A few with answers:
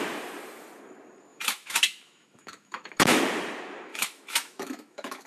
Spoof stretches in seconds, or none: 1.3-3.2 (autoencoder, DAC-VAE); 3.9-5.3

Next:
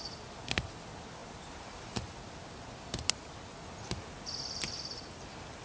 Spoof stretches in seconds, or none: none

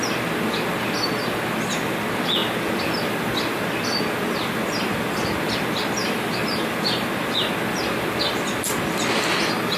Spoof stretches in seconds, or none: 6.0-6.8 (vocoder, BigVGAN v2)

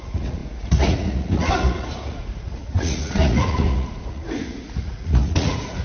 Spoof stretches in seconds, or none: 0.0-5.8 (vocoder, Vocos)

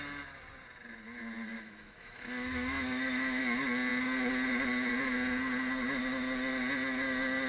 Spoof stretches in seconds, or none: 1.5-3.4 (autoencoder, DAC-VAE)

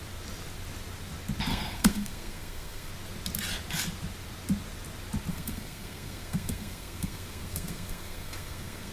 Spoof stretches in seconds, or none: 1.5-2.9 (codec, SNAC); 5.3-8.9

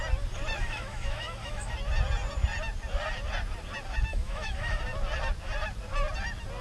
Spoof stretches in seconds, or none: 0.6-1.7 (autoencoder, DAC-VAE); 4.1-4.8

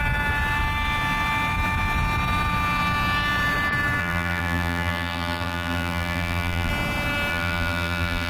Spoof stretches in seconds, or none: 4.0-6.7 (vocoder, BigVGAN v2); 7.3-8.3